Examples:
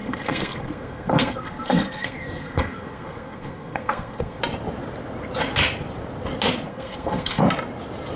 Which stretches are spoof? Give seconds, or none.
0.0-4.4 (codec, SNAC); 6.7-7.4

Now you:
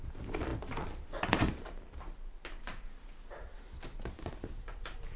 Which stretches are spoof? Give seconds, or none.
none

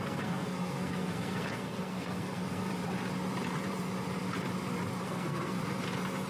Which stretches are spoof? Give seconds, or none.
0.0-2.7 (codec, SNAC); 5.0-5.6

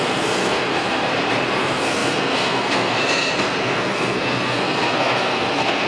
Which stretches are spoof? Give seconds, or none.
0.0-1.1 (codec, SNAC); 1.6-5.9

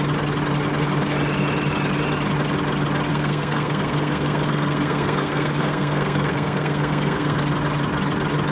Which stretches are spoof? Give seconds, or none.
3.1-7.4 (codec, SNAC)